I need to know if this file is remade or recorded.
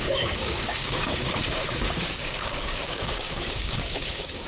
remade